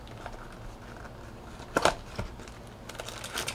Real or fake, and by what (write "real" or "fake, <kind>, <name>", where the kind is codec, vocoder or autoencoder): real